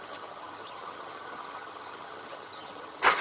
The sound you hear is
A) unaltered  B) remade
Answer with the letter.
B